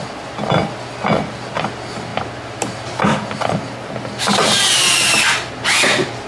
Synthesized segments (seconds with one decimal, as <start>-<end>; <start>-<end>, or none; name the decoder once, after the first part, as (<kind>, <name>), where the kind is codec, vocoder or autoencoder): none